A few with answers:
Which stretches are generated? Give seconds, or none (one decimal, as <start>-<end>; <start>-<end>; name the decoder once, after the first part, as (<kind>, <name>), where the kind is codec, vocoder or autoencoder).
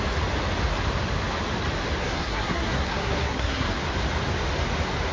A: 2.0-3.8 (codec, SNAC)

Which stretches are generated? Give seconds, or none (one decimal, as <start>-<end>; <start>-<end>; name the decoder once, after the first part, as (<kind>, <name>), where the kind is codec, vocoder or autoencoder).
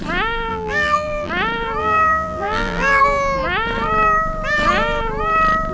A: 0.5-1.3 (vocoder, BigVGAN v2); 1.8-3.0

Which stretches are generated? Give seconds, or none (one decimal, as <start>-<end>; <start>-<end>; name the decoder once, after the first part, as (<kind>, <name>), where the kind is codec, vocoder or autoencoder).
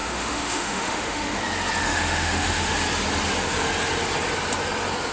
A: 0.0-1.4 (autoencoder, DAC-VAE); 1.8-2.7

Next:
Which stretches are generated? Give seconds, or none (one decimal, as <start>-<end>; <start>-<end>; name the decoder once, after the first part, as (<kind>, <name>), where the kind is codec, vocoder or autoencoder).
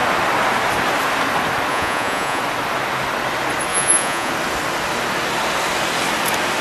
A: 1.7-2.4 (vocoder, Vocos); 3.7-4.3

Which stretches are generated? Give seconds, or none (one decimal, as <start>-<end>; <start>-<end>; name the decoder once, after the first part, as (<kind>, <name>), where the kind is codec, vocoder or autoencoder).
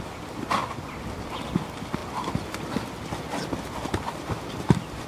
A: none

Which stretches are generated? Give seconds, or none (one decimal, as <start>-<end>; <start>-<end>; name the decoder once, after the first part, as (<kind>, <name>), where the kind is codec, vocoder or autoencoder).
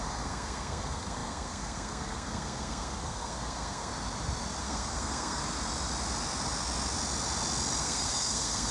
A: 0.0-3.9 (codec, SNAC); 4.6-5.4; 7.8-8.7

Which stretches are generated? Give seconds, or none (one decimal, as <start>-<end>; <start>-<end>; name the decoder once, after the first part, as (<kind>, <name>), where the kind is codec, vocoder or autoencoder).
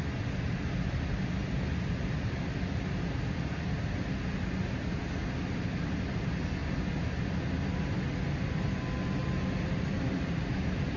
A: none